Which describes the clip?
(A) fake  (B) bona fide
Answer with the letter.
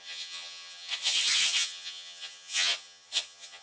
A